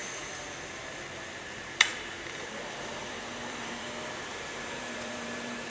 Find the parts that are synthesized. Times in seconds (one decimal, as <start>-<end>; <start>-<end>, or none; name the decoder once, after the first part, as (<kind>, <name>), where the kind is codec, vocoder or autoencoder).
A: 1.4-5.7 (vocoder, BigVGAN v2)